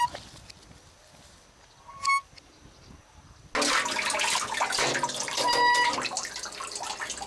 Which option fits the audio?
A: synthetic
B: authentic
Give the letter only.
B